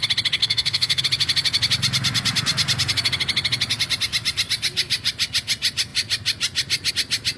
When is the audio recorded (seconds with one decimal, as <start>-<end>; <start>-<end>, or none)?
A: 0.0-0.4; 1.0-7.4